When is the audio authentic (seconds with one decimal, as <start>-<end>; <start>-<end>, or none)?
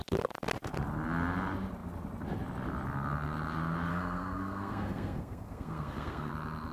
0.0-3.9; 6.3-6.7